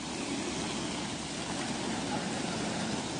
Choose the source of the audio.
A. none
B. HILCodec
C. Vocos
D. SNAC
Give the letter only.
A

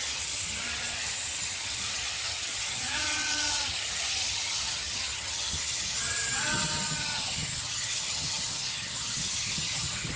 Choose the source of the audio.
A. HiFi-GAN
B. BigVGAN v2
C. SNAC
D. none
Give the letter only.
A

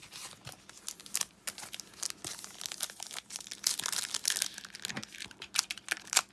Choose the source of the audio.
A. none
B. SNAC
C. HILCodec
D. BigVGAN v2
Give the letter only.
A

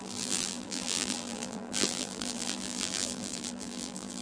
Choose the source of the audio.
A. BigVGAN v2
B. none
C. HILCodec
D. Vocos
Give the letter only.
A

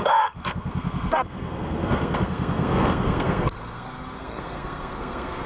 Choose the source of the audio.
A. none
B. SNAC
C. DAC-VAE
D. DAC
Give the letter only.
B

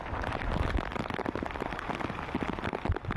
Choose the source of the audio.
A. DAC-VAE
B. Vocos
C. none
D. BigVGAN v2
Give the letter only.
C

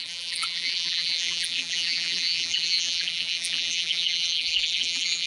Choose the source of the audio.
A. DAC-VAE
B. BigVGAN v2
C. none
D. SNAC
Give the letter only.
B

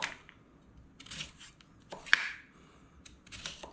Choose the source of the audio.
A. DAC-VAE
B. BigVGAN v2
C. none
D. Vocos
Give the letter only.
C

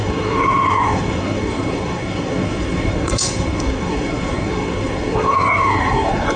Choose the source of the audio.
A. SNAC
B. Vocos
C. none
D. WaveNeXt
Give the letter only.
A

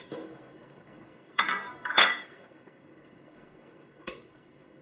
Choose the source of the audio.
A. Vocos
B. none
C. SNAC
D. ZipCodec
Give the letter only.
C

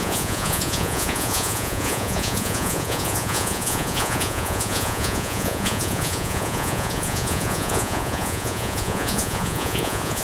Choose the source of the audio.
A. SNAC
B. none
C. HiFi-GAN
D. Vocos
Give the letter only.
D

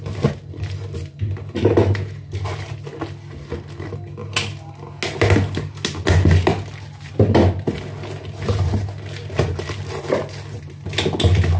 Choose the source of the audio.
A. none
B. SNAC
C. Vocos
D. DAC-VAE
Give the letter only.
A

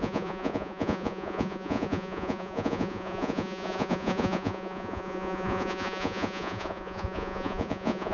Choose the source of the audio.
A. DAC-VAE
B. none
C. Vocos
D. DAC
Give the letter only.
C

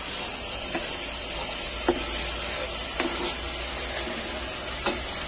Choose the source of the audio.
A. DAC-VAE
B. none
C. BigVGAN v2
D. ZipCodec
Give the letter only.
B